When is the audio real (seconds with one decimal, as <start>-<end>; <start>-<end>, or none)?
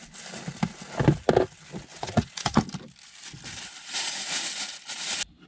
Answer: 0.0-1.9; 2.6-3.7; 4.5-5.5